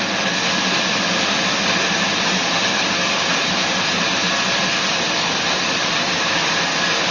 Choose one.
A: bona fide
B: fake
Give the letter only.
A